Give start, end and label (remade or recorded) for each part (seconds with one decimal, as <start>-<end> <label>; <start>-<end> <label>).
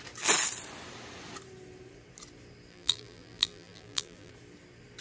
0.0-2.7 recorded; 2.7-4.3 remade; 4.3-5.0 recorded